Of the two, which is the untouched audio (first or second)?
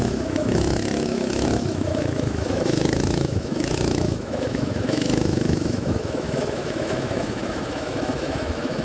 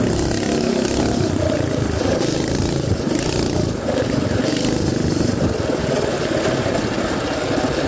second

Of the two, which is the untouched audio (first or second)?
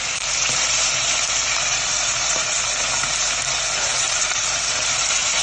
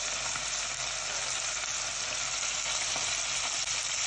second